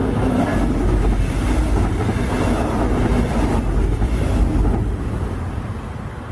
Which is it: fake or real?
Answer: real